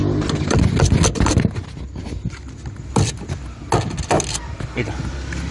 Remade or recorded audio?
recorded